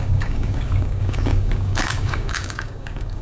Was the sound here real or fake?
fake